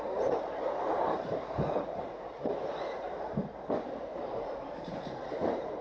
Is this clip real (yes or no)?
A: no